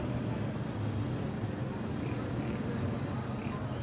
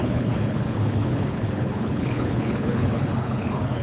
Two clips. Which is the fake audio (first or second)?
second